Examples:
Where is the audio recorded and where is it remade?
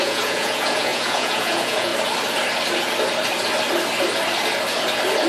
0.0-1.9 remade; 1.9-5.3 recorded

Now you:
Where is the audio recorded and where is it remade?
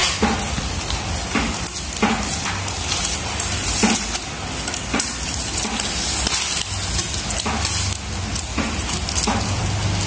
0.0-10.1 recorded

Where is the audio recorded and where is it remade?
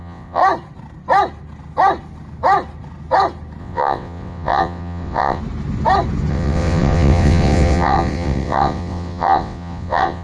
0.0-0.4 remade; 0.4-3.6 recorded; 3.6-5.4 remade; 5.4-6.3 recorded; 6.3-10.2 remade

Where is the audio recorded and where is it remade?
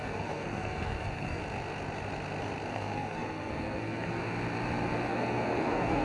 0.0-1.4 remade; 1.4-2.7 recorded; 2.7-4.2 remade; 4.2-5.1 recorded; 5.1-6.0 remade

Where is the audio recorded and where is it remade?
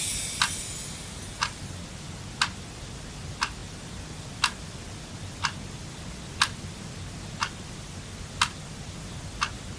0.0-9.8 recorded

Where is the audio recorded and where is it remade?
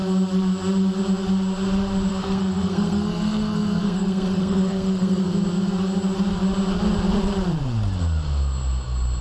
0.0-2.1 recorded; 2.1-5.2 remade; 5.2-9.2 recorded